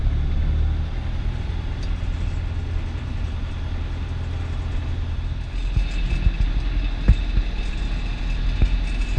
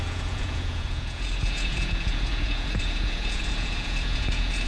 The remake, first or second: second